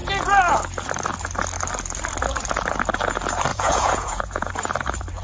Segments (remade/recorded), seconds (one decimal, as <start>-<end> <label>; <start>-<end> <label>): 0.0-3.5 recorded; 3.5-4.5 remade; 4.5-5.2 recorded